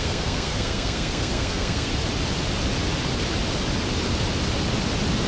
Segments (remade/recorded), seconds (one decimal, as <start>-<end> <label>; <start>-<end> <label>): 0.0-1.9 remade; 1.9-5.3 recorded